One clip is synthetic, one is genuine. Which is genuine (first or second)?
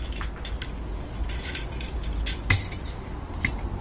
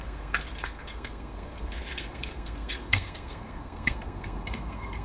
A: first